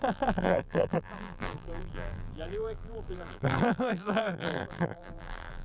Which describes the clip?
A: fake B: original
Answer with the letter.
A